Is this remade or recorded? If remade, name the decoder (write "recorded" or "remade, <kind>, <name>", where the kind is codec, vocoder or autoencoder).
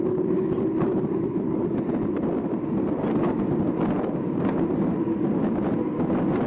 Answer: recorded